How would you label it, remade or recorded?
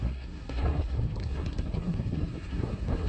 remade